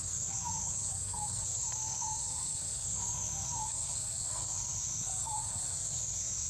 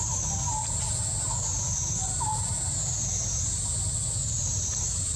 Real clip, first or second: second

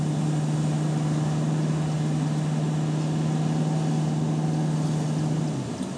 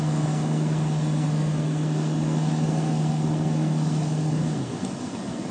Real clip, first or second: first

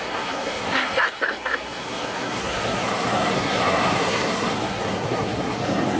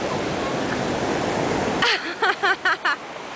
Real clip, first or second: second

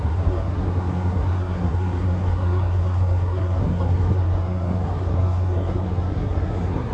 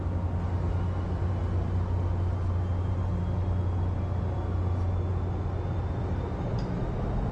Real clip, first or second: second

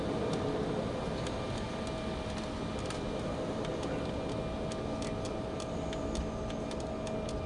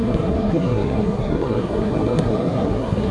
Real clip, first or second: first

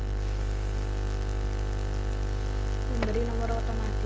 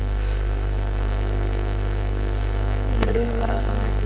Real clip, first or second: first